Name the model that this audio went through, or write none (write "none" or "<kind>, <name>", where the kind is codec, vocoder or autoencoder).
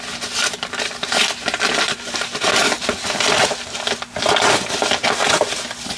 none